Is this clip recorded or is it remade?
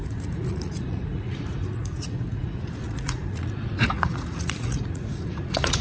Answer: remade